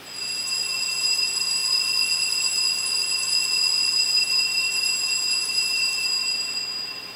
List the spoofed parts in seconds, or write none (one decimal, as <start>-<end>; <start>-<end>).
0.0-1.6; 4.2-7.2